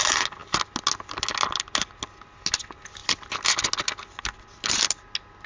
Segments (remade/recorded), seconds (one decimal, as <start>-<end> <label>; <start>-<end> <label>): 0.0-5.5 recorded